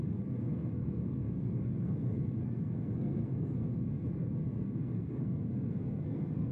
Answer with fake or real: fake